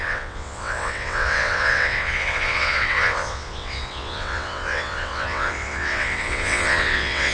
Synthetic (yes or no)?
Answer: yes